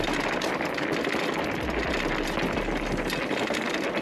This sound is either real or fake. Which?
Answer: real